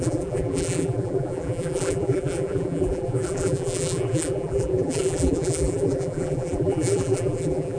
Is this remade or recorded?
remade